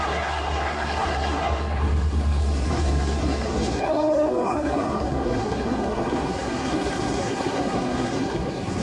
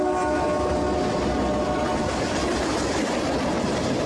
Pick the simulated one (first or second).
first